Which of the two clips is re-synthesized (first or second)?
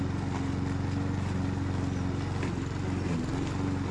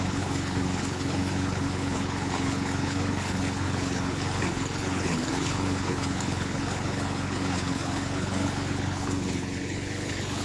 second